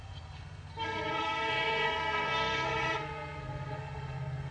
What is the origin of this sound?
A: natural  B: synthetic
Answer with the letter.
B